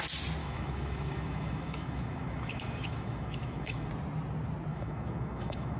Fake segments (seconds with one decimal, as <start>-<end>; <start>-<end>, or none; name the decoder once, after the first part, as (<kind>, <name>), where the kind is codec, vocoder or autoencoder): 0.4-3.9 (autoencoder, DAC-VAE); 4.7-5.8